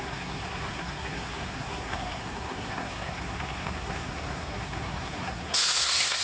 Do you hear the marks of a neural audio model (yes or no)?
yes